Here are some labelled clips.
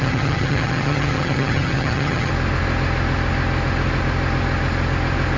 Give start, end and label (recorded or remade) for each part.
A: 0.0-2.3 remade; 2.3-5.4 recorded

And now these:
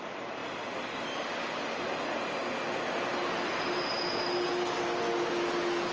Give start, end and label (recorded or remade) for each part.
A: 0.0-5.9 recorded

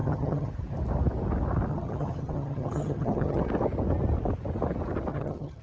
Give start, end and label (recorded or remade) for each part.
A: 0.0-0.5 remade; 0.5-1.7 recorded; 1.7-3.4 remade; 3.4-5.1 recorded; 5.1-5.6 remade

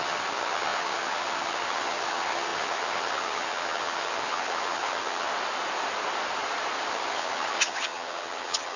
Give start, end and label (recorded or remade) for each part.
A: 0.0-5.3 remade; 5.3-6.9 recorded; 6.9-8.8 remade